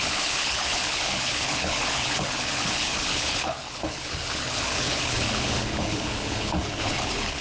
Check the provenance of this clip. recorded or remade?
remade